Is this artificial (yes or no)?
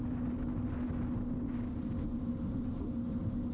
no